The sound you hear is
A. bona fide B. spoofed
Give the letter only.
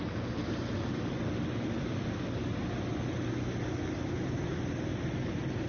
A